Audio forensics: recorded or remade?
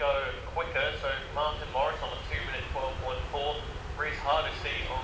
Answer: recorded